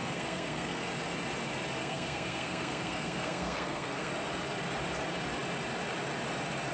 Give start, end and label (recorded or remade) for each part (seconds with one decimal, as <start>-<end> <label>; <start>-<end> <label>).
0.0-0.8 remade; 0.8-1.8 recorded; 1.8-4.1 remade; 4.1-6.7 recorded